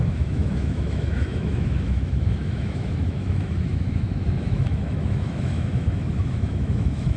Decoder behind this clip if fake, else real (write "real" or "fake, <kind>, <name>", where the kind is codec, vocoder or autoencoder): fake, autoencoder, DAC-VAE